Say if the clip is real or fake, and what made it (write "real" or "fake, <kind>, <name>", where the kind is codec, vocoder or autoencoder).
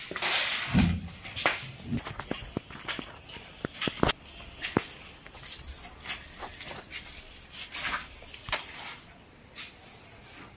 real